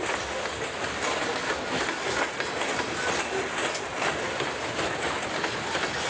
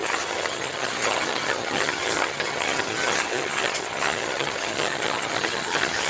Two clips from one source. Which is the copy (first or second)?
second